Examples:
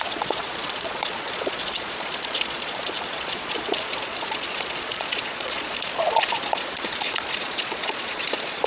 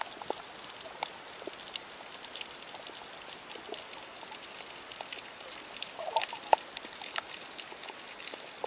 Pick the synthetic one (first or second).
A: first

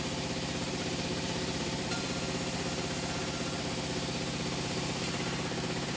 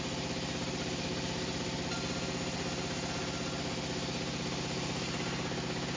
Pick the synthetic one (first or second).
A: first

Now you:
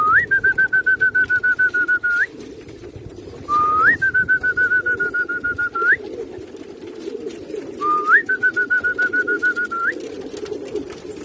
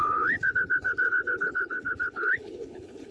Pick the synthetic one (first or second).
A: second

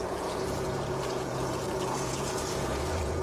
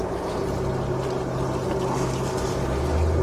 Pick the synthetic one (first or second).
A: first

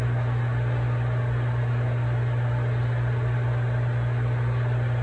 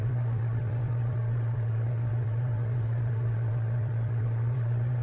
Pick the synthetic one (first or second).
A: second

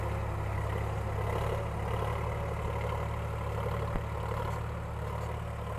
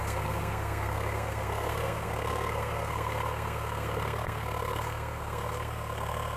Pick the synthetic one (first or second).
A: second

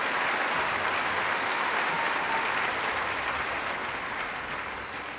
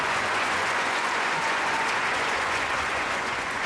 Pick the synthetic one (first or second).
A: second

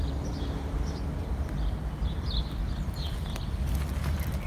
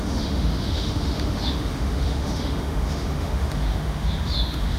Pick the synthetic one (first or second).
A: second